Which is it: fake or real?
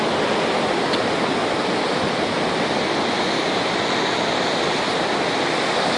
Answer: real